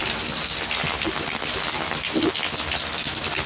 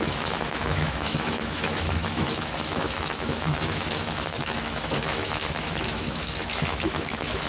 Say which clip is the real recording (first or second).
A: first